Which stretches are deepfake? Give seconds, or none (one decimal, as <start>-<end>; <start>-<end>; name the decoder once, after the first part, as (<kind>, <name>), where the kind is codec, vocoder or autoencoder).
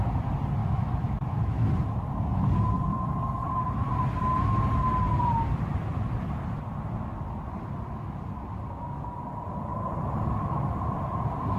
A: 0.6-1.7 (autoencoder, DAC-VAE)